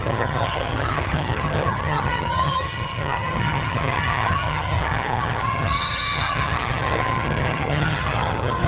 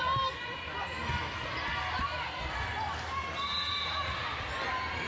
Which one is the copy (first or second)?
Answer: first